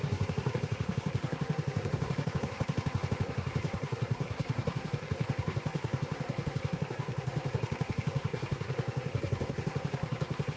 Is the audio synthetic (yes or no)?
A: yes